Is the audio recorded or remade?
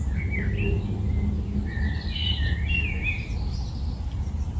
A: recorded